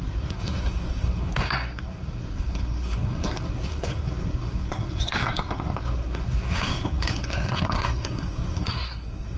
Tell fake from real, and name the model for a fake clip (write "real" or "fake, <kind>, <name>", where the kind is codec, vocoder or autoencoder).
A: fake, codec, SNAC